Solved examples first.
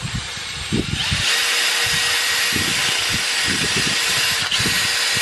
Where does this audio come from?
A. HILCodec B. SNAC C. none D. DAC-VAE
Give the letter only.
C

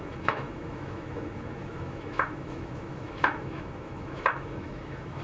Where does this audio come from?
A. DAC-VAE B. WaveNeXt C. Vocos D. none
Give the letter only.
A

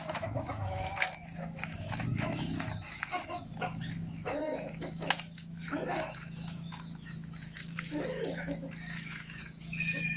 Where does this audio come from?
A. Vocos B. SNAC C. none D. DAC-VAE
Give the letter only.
D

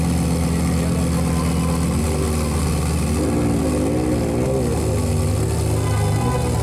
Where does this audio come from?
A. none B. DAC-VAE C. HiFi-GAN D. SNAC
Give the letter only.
A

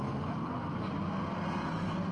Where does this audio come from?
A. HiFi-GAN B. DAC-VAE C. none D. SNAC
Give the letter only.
C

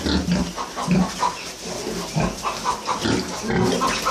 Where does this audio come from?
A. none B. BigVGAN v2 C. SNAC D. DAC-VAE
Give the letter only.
A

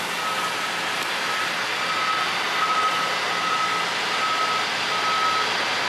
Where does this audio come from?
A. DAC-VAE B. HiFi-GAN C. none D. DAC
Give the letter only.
C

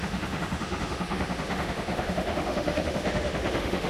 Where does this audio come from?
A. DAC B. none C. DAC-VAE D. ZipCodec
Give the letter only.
C